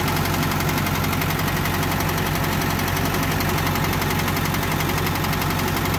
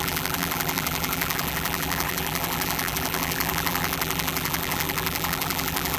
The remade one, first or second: second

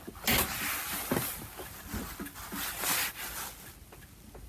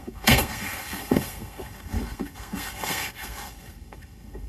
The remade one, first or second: second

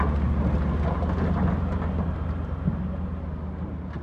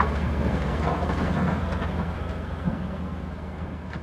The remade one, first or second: second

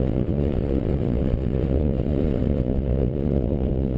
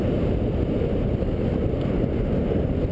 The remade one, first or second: first